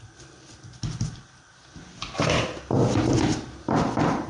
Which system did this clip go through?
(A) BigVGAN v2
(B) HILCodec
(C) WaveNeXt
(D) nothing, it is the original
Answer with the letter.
D